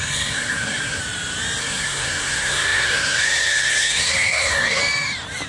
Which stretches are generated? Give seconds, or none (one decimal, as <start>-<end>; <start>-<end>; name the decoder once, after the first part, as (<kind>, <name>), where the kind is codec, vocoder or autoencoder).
0.0-1.0 (codec, SNAC); 1.6-4.8